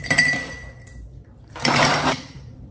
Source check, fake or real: fake